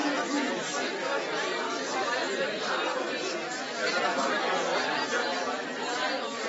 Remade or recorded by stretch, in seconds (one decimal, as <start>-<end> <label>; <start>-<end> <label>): 0.0-6.5 recorded